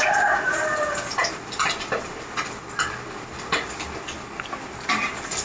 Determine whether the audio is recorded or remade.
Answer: recorded